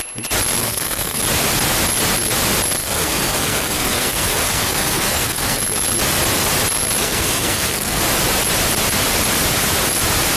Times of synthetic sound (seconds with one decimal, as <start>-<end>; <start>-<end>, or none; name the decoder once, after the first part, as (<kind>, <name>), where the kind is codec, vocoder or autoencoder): 0.6-1.2 (codec, SNAC); 2.8-5.6; 7.0-8.0

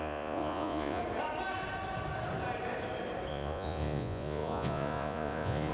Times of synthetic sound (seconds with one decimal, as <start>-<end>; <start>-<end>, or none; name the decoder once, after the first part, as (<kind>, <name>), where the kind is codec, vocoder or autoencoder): 0.0-1.0 (vocoder, Vocos); 3.3-5.7